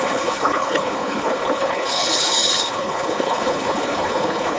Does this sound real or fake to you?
fake